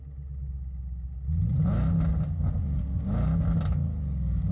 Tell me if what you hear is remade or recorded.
recorded